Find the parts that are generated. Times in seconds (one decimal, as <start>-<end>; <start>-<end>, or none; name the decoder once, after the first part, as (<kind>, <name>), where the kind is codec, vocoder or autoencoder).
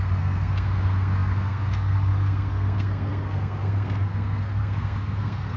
0.0-5.6 (codec, SNAC)